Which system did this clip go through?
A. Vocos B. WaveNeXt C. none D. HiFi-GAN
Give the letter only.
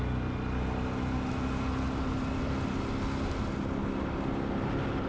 C